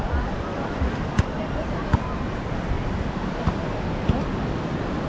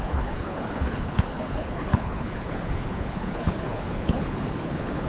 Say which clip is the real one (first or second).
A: first